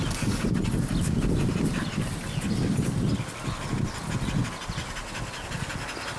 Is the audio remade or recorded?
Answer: recorded